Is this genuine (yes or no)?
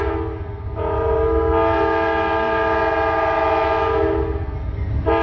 yes